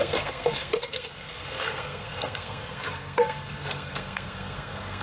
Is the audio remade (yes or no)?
yes